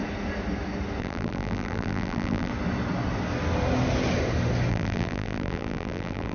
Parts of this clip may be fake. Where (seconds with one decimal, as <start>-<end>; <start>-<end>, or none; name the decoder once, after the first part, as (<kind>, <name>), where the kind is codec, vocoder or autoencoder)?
1.0-2.5 (vocoder, BigVGAN v2); 4.7-6.3